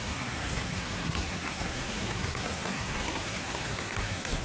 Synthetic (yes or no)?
yes